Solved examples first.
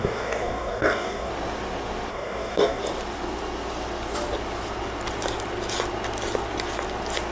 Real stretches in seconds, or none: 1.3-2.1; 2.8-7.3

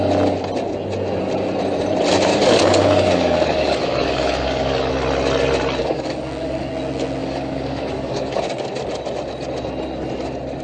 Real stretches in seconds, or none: 0.0-2.3; 4.9-5.8; 6.7-7.2; 8.4-10.6